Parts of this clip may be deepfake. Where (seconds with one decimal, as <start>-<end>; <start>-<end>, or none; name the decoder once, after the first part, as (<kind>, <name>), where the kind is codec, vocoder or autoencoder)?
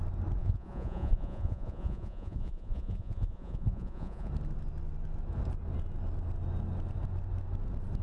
0.4-4.3 (vocoder, Vocos)